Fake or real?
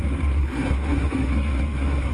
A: fake